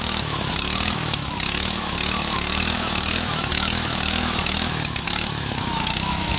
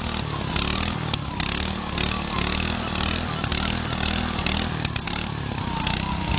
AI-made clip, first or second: first